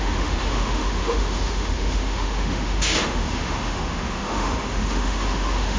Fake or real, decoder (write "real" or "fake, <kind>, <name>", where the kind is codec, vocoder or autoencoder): fake, autoencoder, DAC-VAE